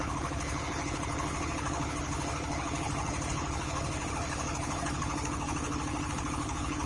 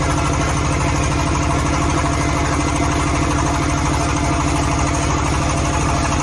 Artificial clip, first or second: first